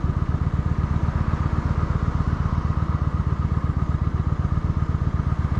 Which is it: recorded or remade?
recorded